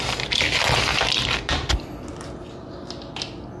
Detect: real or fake real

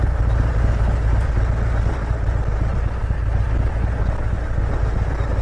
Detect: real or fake real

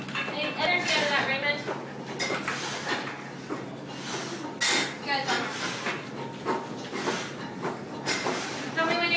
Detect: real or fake real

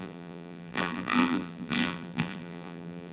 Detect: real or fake fake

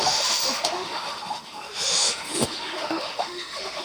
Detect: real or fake fake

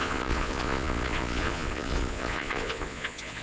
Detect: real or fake fake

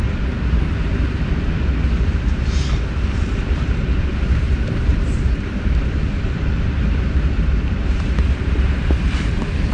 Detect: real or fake fake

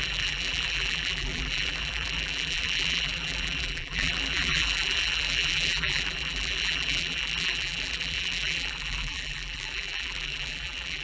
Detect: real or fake fake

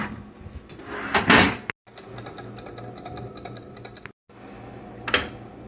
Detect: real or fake real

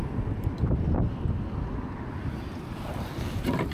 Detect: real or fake real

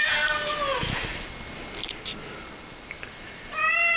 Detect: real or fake real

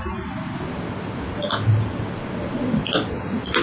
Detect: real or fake real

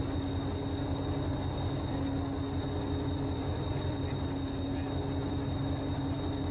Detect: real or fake real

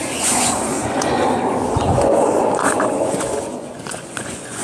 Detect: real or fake fake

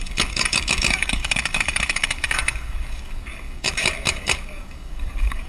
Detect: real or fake fake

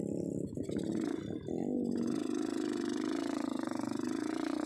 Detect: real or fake real